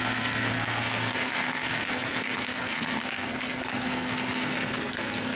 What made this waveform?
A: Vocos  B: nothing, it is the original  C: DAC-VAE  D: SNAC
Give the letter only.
D